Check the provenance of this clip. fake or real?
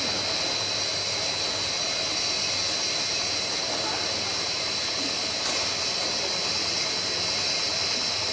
real